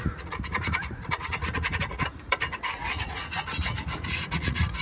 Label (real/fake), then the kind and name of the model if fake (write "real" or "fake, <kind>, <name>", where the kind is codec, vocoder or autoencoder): fake, vocoder, Vocos